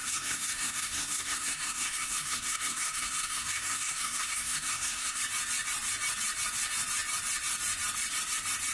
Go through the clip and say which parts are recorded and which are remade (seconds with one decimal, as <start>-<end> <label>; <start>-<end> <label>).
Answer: 0.0-5.2 remade; 5.2-8.7 recorded